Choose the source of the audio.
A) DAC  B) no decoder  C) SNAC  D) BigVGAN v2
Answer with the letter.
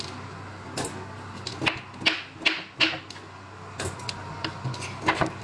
B